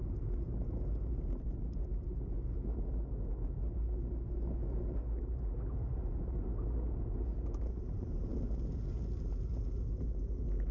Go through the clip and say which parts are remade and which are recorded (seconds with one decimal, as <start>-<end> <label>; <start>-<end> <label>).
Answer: 0.0-6.0 recorded; 6.0-6.5 remade; 6.5-10.7 recorded